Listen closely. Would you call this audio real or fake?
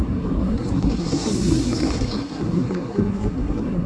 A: fake